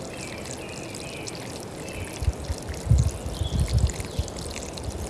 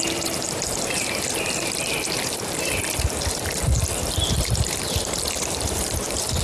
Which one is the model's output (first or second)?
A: second